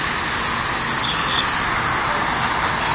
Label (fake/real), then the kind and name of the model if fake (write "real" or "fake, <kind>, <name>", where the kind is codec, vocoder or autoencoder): real